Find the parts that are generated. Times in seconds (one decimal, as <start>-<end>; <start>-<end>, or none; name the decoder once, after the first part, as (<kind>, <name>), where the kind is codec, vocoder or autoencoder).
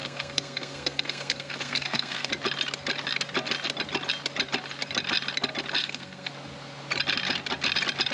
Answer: 0.0-2.3 (codec, SNAC); 5.8-6.3